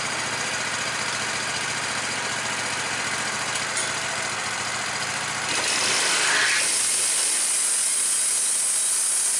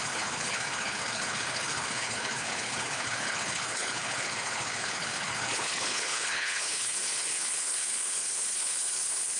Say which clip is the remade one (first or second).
second